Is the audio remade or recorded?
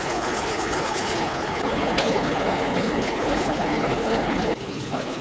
remade